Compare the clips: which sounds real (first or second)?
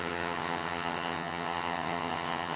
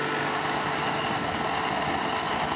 second